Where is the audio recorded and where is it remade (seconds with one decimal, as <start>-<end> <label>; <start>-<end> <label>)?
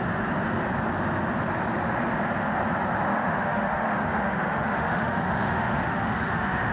0.0-3.1 recorded; 3.1-6.7 remade